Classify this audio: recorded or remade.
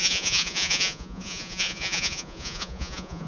remade